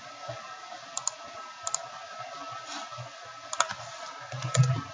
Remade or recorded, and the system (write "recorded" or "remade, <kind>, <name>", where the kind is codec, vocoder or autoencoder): recorded